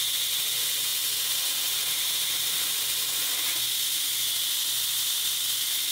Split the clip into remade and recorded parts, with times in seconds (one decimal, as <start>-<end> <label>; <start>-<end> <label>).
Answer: 0.0-5.9 recorded